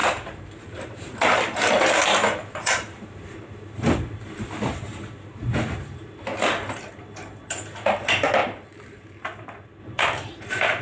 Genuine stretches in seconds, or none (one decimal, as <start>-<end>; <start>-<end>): 6.3-7.0